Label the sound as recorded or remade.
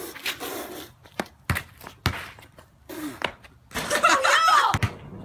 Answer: recorded